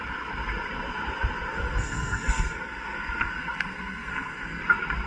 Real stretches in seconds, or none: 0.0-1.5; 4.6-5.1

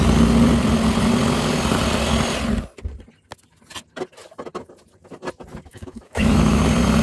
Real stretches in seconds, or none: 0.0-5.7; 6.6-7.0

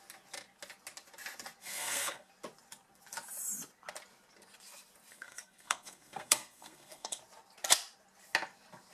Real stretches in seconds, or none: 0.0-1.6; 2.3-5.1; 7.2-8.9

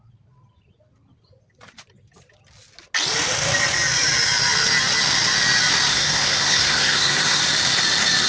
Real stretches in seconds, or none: 0.0-5.9; 7.4-8.3

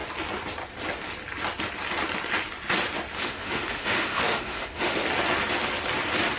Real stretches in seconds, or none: 0.0-3.2; 5.0-6.4

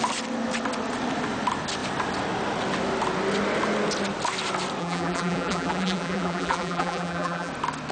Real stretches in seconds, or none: 0.0-4.8; 7.5-7.9

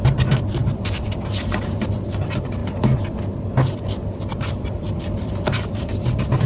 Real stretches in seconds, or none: 2.6-4.1